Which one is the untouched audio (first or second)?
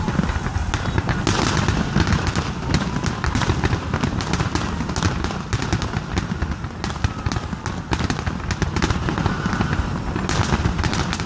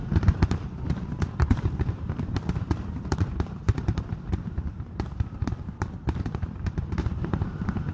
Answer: first